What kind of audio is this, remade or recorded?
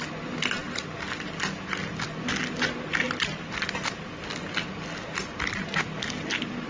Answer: recorded